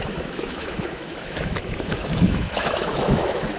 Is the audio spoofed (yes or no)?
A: yes